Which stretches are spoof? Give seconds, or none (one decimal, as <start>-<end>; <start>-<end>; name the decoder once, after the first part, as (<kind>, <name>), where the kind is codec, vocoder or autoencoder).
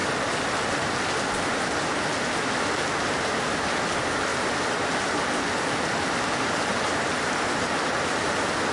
none